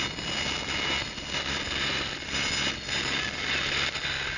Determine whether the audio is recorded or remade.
recorded